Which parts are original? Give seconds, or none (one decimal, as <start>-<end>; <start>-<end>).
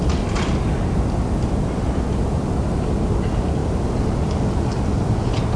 0.0-5.6